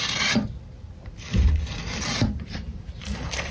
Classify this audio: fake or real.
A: real